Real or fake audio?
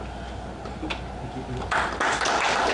real